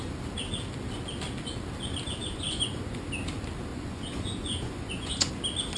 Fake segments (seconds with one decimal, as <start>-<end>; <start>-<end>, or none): 2.2-3.0; 3.7-5.3